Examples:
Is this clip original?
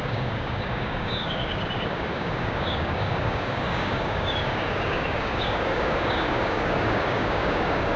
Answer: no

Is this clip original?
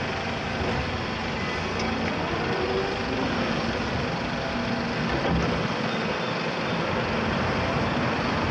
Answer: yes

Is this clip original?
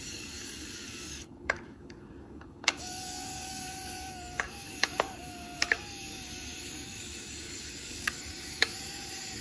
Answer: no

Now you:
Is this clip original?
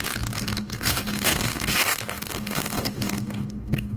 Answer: no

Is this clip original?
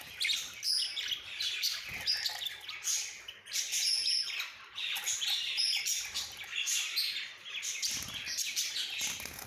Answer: yes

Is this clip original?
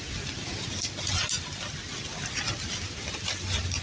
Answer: yes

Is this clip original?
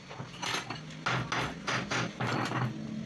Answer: yes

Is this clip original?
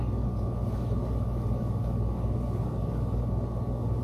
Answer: no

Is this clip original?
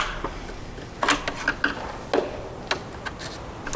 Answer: yes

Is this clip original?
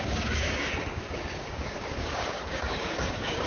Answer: no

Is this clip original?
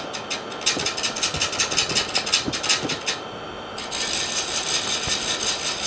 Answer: yes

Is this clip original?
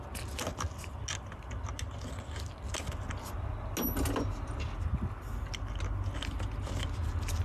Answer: yes